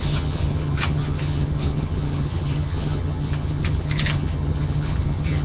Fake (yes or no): yes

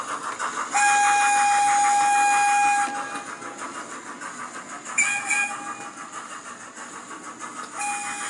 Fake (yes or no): no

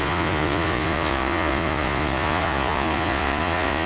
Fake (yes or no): yes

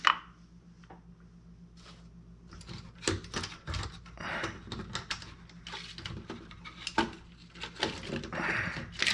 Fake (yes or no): no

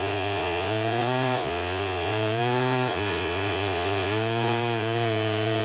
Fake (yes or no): yes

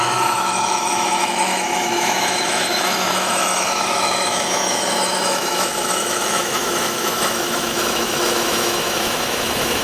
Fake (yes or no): yes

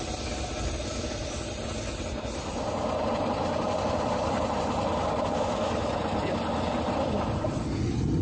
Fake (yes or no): no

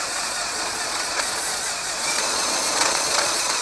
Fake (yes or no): yes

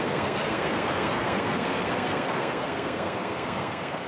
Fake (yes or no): yes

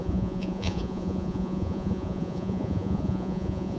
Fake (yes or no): yes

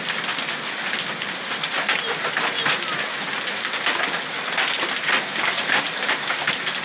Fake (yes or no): no